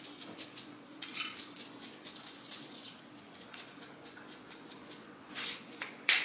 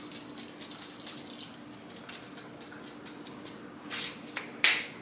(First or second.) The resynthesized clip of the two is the first